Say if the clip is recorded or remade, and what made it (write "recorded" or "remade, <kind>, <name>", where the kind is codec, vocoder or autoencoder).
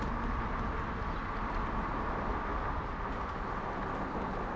recorded